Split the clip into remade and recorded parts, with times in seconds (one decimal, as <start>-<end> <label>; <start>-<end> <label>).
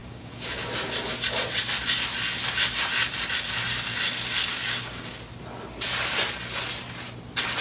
0.0-0.7 remade; 0.7-4.4 recorded; 4.4-5.2 remade; 5.2-7.6 recorded